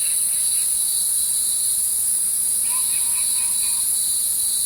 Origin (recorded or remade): recorded